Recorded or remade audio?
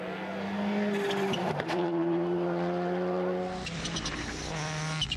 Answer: recorded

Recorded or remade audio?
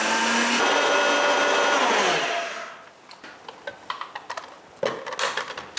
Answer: recorded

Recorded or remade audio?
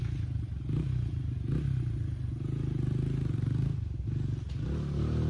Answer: recorded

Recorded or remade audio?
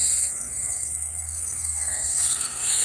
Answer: remade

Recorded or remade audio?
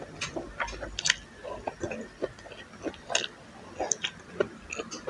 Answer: recorded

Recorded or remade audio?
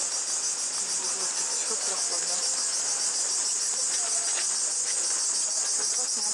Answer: recorded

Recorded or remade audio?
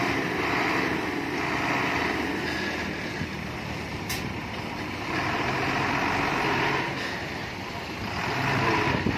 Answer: recorded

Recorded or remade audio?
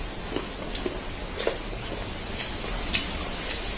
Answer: recorded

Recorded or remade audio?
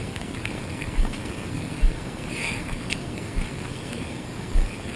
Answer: remade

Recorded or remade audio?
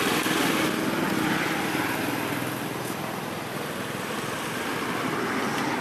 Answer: recorded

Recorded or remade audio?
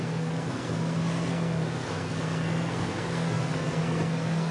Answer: remade